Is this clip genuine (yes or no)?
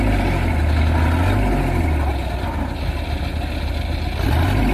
yes